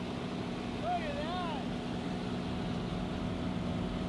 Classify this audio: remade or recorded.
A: recorded